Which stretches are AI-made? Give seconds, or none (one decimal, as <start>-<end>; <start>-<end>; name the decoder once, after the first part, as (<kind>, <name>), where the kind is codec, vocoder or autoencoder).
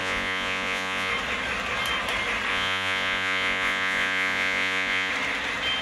0.0-1.1 (vocoder, Vocos); 2.5-5.1